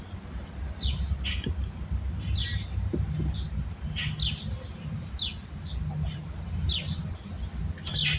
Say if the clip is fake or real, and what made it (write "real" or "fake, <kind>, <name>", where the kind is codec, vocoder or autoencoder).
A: real